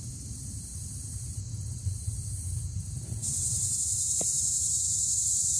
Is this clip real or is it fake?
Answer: fake